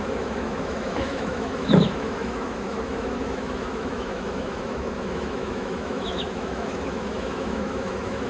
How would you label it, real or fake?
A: fake